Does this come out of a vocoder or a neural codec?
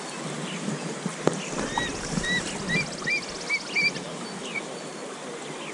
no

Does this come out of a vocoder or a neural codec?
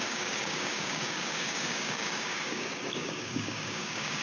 yes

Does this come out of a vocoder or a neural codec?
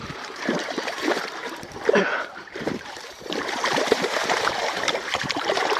yes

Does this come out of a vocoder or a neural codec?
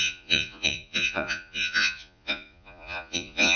yes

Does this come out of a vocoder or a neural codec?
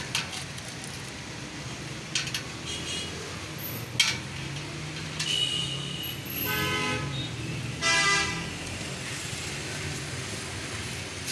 no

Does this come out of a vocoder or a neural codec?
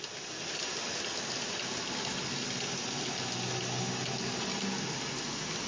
no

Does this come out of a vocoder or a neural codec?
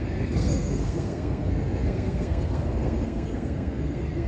yes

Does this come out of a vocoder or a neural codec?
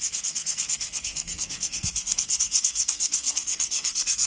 yes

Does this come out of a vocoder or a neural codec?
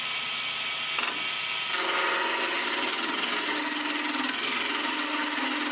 no